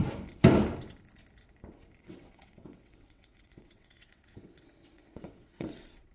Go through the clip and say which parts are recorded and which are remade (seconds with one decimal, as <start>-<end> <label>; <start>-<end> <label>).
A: 0.0-2.0 recorded; 2.0-6.1 remade